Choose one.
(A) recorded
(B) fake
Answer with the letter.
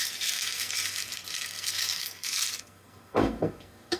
B